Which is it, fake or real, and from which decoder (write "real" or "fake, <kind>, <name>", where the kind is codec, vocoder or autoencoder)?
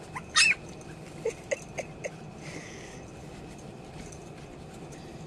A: real